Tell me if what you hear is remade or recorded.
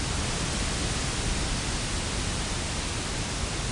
recorded